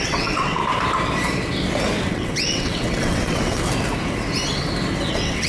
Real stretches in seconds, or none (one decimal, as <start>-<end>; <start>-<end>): 0.6-2.1; 3.6-5.1